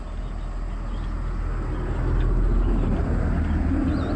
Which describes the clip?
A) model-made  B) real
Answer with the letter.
B